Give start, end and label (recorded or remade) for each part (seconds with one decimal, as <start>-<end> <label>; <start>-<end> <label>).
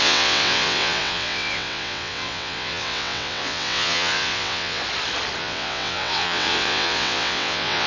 0.0-4.8 remade; 4.8-5.4 recorded; 5.4-7.9 remade